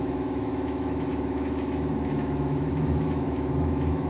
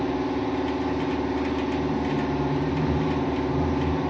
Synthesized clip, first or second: first